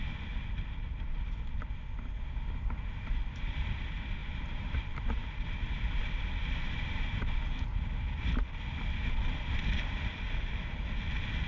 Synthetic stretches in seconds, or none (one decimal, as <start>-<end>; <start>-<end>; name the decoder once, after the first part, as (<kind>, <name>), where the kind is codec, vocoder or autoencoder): 4.2-4.9 (vocoder, BigVGAN v2)